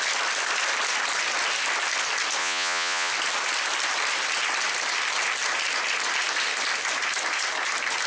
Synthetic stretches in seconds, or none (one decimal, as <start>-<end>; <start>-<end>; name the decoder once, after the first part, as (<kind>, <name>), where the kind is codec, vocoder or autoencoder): 2.4-3.1 (vocoder, Vocos)